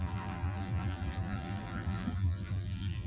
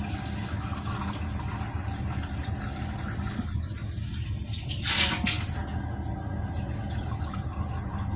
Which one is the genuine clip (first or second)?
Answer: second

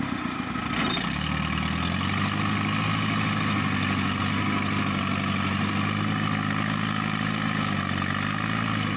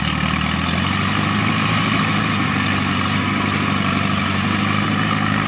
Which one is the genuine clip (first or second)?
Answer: first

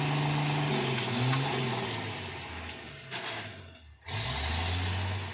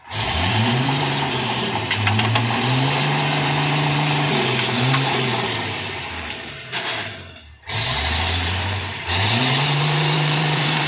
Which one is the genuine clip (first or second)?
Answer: first